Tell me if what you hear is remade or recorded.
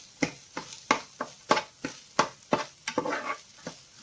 recorded